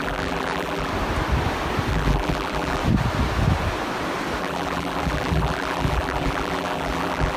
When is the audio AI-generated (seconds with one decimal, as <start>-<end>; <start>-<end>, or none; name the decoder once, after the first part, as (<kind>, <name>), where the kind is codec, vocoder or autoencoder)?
0.0-0.9 (vocoder, BigVGAN v2); 1.9-2.8; 4.4-7.4